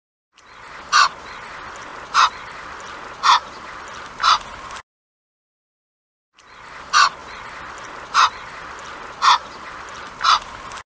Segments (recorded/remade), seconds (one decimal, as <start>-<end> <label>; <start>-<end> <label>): 0.0-10.9 recorded